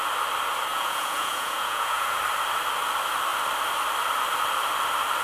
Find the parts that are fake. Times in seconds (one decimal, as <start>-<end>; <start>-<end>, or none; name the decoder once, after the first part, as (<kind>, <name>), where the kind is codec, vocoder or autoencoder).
0.7-2.2 (vocoder, Vocos)